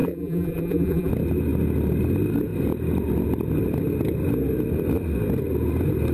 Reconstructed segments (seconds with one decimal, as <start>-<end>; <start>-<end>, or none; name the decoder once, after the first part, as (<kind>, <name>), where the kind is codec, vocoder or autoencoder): 0.0-1.1 (vocoder, BigVGAN v2)